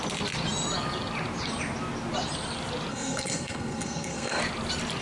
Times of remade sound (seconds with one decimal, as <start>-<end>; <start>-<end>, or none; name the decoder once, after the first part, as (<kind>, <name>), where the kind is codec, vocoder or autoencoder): 2.9-4.4 (codec, SNAC)